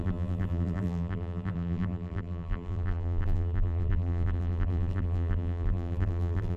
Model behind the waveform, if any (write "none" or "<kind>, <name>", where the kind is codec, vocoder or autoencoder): vocoder, BigVGAN v2